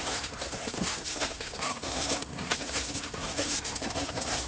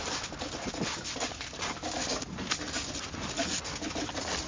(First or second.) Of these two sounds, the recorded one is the second